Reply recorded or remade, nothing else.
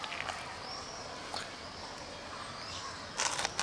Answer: recorded